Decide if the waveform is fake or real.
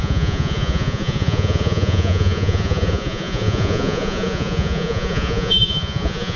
fake